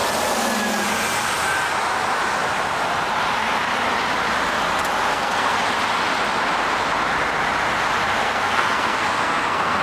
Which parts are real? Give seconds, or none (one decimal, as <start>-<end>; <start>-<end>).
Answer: 0.0-5.1; 5.6-8.2

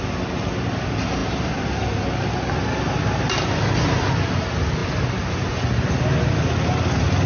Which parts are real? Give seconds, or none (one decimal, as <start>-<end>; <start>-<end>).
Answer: 0.0-7.3

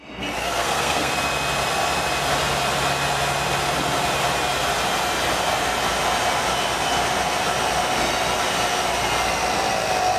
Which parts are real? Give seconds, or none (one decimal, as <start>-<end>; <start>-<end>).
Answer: 0.0-0.4; 1.1-10.2